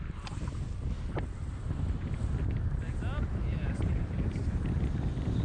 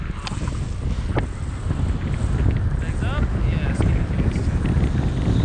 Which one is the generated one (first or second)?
first